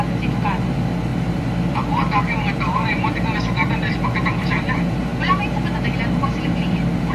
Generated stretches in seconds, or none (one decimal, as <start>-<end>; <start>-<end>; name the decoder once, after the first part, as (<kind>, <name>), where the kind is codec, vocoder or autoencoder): 1.1-4.6 (vocoder, BigVGAN v2)